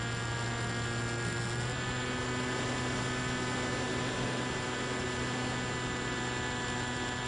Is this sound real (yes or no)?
yes